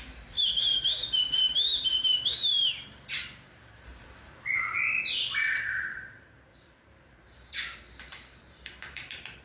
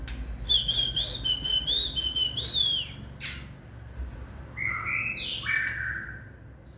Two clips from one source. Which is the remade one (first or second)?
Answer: first